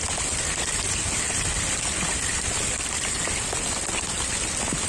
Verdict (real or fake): real